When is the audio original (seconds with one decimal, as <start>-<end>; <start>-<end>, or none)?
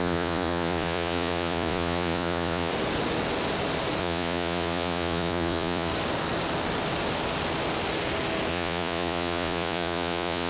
2.7-4.0; 5.9-8.5